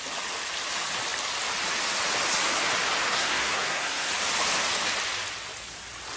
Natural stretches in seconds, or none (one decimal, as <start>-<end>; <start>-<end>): 0.0-3.1; 4.1-6.2